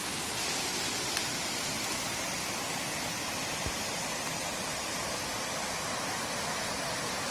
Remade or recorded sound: recorded